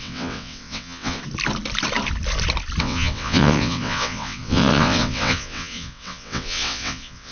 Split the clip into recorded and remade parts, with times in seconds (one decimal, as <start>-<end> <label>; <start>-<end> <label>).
0.0-1.2 remade; 1.2-2.8 recorded; 2.8-7.3 remade